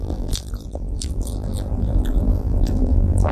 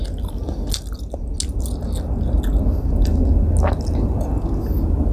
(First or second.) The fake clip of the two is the first